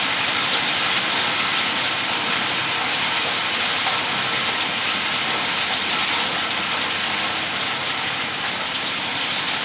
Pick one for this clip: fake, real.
real